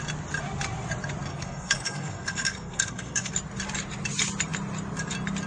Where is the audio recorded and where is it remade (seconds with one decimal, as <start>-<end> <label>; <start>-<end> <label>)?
0.0-1.3 recorded; 1.3-3.3 remade; 3.3-5.5 recorded